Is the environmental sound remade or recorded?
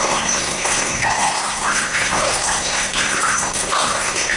remade